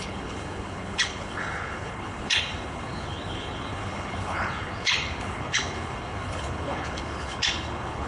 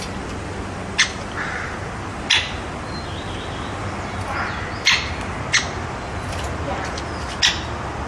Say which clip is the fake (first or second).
first